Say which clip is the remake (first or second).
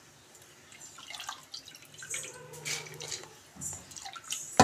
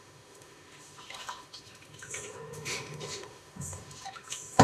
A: second